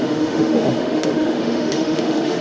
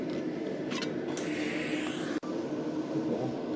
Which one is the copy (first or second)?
first